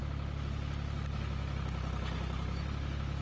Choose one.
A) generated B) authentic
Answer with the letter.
B